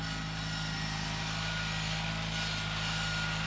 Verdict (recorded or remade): recorded